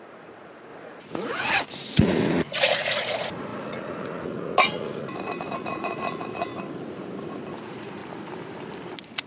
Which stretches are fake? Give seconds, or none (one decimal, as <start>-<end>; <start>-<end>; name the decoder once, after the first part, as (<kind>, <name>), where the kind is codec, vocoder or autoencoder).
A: 0.0-6.5 (vocoder, Vocos); 7.6-8.0